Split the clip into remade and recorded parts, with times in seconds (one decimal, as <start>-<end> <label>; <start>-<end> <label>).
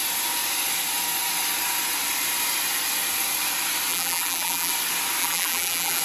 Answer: 0.0-3.9 recorded; 3.9-4.7 remade; 4.7-5.2 recorded; 5.2-6.0 remade